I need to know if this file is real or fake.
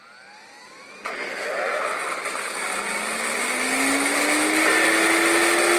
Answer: real